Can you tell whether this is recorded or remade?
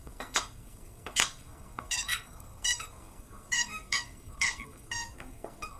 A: remade